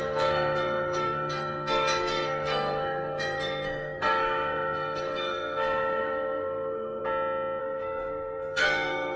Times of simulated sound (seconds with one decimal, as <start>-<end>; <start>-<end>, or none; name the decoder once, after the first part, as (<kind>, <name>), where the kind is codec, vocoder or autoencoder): 0.0-7.0 (codec, SNAC); 7.6-9.2

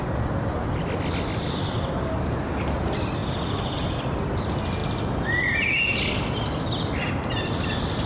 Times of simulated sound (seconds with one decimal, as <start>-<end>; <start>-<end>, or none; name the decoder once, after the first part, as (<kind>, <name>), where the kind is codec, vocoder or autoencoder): none

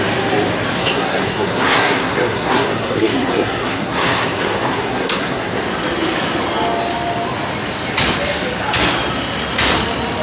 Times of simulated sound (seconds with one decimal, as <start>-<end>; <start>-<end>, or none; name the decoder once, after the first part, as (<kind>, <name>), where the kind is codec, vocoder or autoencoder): 0.8-5.6 (codec, SNAC)

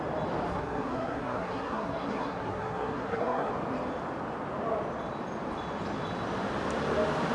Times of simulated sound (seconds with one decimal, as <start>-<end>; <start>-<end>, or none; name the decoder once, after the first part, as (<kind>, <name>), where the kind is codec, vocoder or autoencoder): 0.5-3.5 (codec, SNAC)